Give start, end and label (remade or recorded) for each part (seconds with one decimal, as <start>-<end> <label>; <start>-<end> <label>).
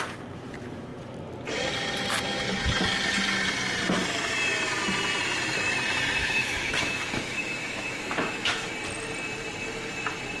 0.0-6.2 recorded; 6.2-8.7 remade; 8.7-10.4 recorded